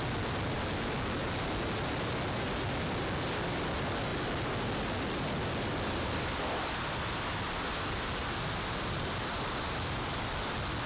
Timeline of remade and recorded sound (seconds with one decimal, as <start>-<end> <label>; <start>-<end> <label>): 0.0-10.9 recorded